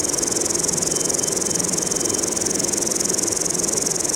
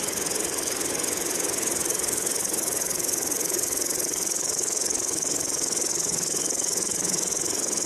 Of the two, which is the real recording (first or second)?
first